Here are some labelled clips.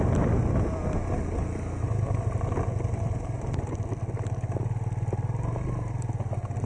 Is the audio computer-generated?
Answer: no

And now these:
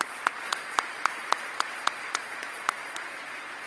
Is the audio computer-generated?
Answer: yes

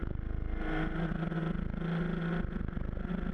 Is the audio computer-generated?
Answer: no